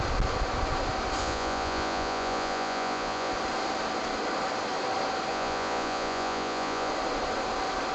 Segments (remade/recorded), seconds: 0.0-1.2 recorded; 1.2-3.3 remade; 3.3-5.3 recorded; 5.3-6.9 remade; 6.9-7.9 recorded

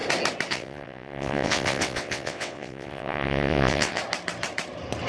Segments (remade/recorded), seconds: 0.0-0.5 recorded; 0.5-4.0 remade; 4.0-5.1 recorded

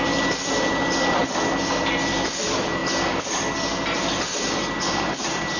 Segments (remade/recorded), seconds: 0.0-5.6 recorded

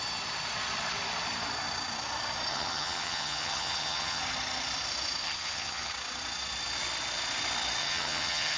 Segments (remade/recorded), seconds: 0.0-2.5 recorded; 2.5-4.2 remade; 4.2-5.2 recorded; 5.2-5.9 remade; 5.9-7.8 recorded; 7.8-8.6 remade

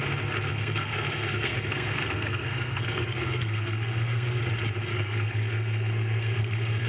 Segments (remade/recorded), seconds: 0.0-0.5 recorded; 0.5-4.4 remade; 4.4-4.9 recorded; 4.9-6.9 remade

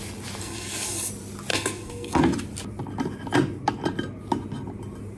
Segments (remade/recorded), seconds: 0.0-0.4 recorded; 0.4-1.1 remade; 1.1-1.5 recorded; 1.5-2.2 remade; 2.2-5.2 recorded